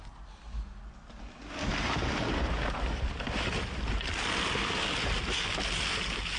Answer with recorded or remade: recorded